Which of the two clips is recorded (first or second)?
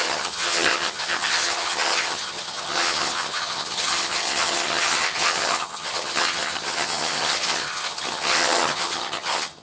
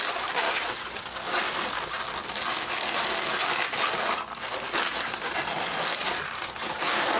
second